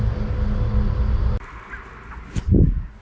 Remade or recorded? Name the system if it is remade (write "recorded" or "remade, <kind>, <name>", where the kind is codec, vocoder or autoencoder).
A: recorded